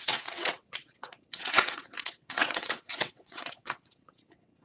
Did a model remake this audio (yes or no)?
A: yes